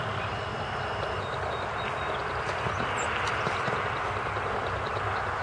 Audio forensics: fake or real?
real